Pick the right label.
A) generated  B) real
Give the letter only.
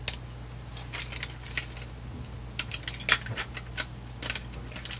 B